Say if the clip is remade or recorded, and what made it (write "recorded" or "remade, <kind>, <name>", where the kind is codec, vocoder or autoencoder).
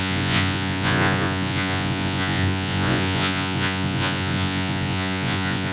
remade, vocoder, Vocos